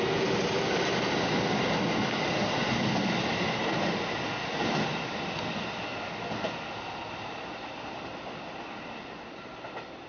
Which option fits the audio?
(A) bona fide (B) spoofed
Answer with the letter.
A